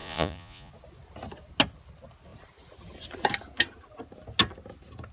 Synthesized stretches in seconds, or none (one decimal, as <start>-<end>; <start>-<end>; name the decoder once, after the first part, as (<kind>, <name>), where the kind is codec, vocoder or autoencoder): 0.0-0.7 (vocoder, Vocos)

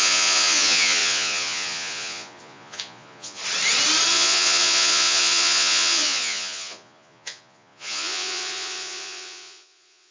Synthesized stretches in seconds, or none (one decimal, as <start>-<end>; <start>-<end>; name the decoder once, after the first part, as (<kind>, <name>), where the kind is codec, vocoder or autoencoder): 0.0-3.4 (vocoder, Vocos); 4.1-10.1

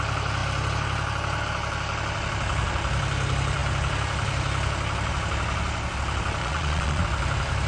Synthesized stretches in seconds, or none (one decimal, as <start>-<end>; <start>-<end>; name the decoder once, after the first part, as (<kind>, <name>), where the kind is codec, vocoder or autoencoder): 6.4-7.0 (vocoder, Vocos)

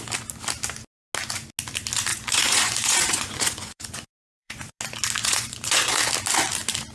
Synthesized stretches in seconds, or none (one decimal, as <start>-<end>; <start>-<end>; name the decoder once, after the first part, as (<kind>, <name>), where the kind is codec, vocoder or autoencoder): 2.1-4.8 (vocoder, Vocos); 5.2-6.0

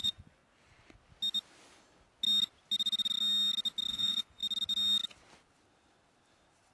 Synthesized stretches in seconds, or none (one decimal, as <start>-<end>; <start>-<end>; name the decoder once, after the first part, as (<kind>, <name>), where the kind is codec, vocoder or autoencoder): 0.0-0.4 (vocoder, Vocos); 3.9-4.4

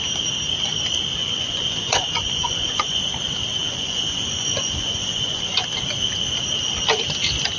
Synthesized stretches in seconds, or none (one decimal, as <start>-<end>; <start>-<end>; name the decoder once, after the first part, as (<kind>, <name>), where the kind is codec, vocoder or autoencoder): 1.2-3.0 (vocoder, Vocos); 3.6-5.6

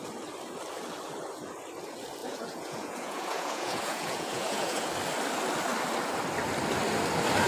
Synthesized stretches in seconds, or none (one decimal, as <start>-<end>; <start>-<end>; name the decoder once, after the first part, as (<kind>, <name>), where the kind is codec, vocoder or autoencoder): 2.2-4.9 (vocoder, Vocos)